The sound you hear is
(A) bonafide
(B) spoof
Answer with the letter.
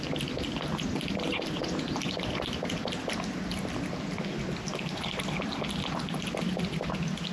A